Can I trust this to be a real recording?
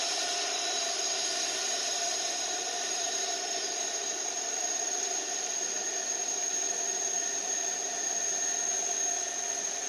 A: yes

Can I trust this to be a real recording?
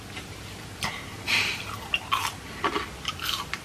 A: yes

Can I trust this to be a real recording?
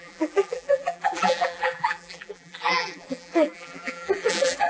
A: no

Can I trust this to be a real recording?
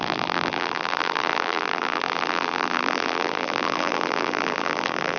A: no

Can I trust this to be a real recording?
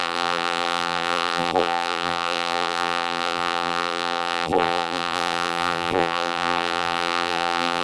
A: no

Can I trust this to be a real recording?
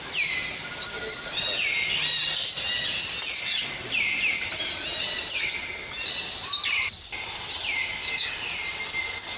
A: yes